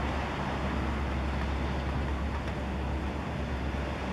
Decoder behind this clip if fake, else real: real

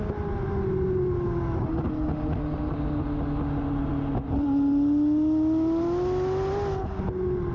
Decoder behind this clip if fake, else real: real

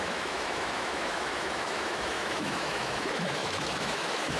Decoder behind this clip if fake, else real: fake, autoencoder, DAC-VAE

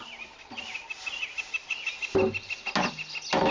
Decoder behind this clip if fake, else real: real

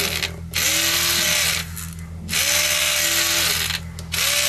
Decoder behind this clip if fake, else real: real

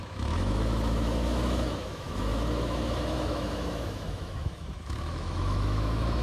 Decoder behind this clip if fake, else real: fake, autoencoder, DAC-VAE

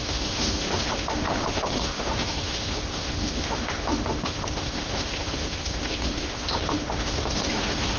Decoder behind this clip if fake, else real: fake, autoencoder, DAC-VAE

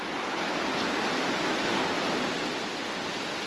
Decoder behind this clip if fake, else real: real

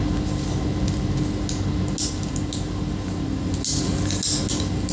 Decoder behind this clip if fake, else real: real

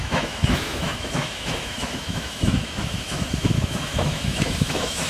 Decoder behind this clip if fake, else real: fake, autoencoder, DAC-VAE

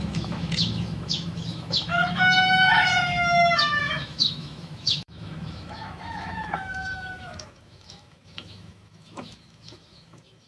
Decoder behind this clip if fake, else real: fake, autoencoder, DAC-VAE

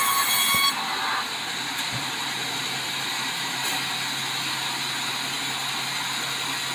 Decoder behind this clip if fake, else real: real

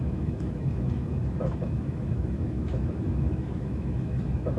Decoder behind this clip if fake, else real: fake, autoencoder, DAC-VAE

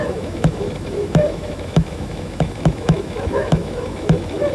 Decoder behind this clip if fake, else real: fake, autoencoder, DAC-VAE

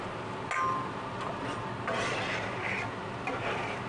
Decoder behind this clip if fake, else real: real